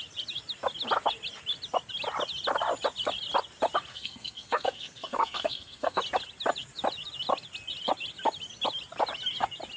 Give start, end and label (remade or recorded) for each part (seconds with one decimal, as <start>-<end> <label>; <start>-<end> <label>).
0.0-3.9 recorded; 3.9-6.0 remade; 6.0-9.8 recorded